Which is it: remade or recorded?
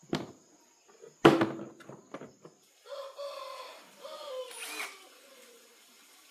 recorded